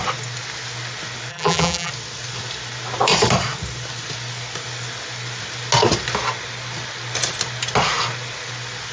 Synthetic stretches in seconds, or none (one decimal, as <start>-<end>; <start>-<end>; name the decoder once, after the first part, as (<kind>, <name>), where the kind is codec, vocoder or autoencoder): 1.3-1.9 (vocoder, BigVGAN v2)